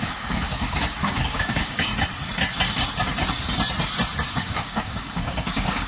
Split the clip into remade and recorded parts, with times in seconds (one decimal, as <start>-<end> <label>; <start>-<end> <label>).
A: 0.0-1.9 remade; 1.9-4.3 recorded; 4.3-5.9 remade